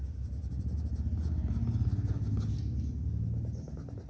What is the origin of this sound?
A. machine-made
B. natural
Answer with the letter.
B